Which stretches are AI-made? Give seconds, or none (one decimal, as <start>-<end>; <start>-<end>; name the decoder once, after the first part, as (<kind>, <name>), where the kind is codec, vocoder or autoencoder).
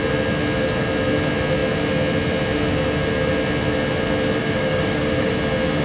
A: 4.4-5.3 (codec, DAC)